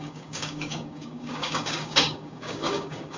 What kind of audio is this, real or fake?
fake